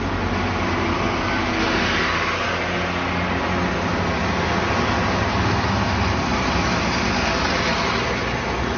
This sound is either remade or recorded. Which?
recorded